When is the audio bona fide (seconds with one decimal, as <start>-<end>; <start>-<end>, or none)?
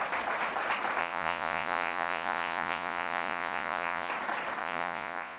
0.0-1.0; 4.1-4.6